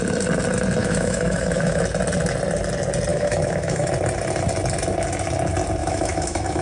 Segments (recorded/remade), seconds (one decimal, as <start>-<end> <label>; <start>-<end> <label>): 0.0-0.8 recorded; 0.8-1.8 remade; 1.8-3.1 recorded; 3.1-3.9 remade; 3.9-5.8 recorded; 5.8-6.6 remade